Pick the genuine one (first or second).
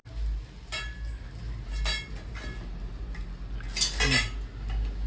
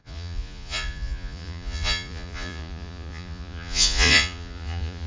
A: first